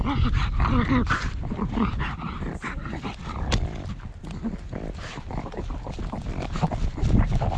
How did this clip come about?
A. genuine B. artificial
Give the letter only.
A